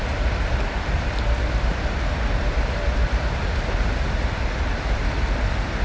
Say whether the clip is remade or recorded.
remade